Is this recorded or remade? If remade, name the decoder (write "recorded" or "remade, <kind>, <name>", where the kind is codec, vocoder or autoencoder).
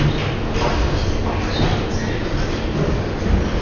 recorded